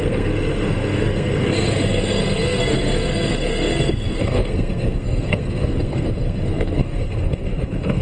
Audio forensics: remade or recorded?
remade